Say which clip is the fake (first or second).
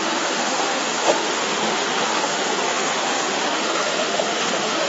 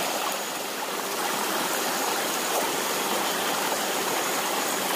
first